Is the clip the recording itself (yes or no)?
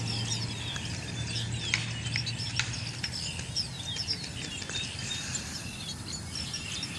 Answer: yes